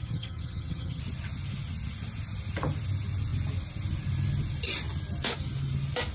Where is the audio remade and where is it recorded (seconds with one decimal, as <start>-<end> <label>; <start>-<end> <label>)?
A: 0.0-1.0 remade; 1.0-6.1 recorded